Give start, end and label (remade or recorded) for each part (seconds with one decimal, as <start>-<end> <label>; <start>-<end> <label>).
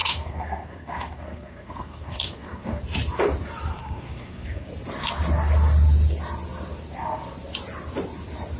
0.0-2.8 remade; 2.8-3.7 recorded; 3.7-4.7 remade; 4.7-8.6 recorded